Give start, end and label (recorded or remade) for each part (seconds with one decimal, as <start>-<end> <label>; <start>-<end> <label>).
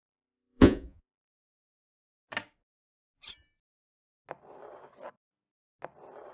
0.0-2.1 remade; 2.1-6.3 recorded